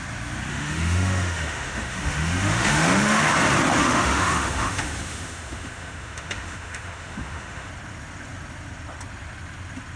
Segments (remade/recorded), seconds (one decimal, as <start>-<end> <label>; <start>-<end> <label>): 0.0-0.5 recorded; 0.5-3.3 remade; 3.3-3.8 recorded; 3.8-7.7 remade; 7.7-10.0 recorded